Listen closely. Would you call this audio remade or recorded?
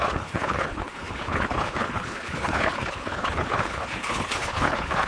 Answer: remade